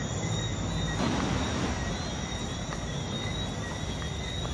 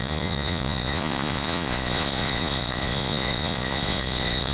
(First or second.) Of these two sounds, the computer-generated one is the second